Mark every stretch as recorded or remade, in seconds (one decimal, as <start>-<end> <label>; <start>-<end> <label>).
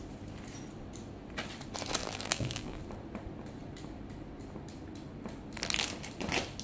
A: 0.0-2.0 recorded; 2.0-2.8 remade; 2.8-6.6 recorded